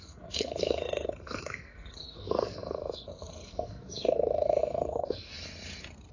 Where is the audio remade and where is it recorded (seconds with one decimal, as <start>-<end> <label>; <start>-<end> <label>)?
0.0-5.3 remade; 5.3-6.1 recorded